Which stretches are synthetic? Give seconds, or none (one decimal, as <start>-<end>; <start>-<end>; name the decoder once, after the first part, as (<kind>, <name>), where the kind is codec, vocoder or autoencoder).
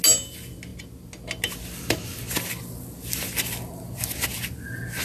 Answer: none